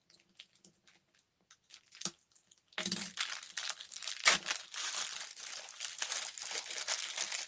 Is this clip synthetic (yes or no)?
no